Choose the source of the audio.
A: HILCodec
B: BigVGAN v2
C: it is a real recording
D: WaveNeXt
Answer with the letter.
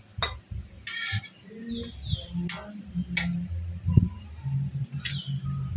C